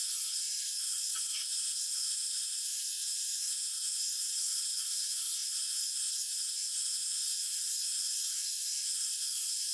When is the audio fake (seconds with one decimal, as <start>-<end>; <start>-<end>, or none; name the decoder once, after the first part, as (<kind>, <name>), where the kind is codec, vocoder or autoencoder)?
0.0-9.7 (codec, SNAC)